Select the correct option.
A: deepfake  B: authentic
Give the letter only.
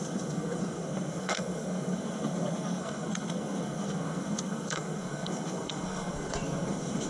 A